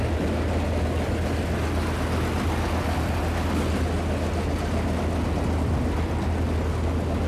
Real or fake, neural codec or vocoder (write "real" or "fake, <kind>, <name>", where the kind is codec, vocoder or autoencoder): real